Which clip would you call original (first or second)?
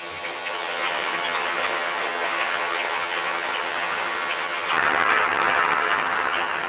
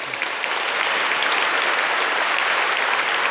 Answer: second